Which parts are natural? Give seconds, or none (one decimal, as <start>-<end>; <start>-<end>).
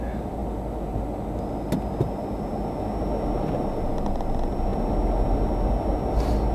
0.0-6.5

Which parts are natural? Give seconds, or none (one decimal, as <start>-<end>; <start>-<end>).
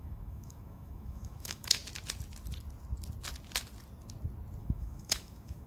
1.8-4.6